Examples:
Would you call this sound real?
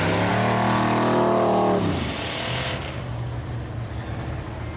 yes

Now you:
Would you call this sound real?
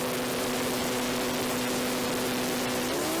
yes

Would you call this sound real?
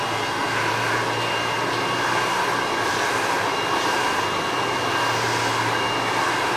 yes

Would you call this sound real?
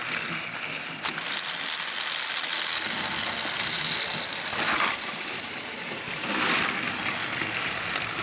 no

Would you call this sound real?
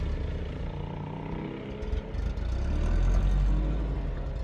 yes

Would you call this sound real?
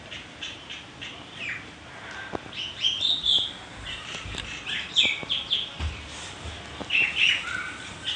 yes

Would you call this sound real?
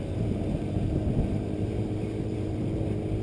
no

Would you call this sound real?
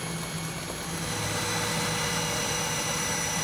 yes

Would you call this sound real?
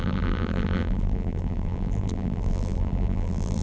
no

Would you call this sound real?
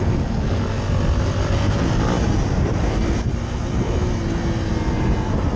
yes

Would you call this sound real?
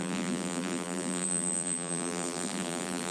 no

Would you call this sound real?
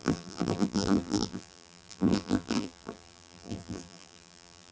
no